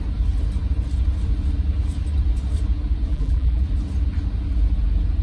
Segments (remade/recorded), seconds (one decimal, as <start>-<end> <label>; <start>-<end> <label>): 0.0-3.1 recorded; 3.1-3.6 remade; 3.6-5.2 recorded